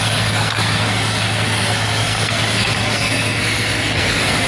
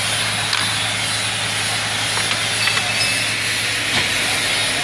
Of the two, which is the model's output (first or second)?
first